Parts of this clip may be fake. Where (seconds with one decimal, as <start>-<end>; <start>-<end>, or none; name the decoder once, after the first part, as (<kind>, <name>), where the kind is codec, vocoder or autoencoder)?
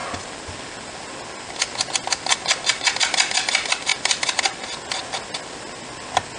1.9-5.0 (vocoder, BigVGAN v2)